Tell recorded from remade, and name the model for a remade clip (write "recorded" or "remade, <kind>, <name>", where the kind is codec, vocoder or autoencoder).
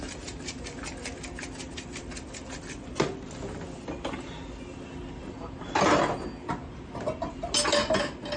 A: recorded